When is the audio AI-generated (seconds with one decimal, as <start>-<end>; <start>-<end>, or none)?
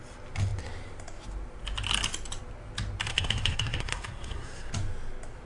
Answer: 3.1-4.7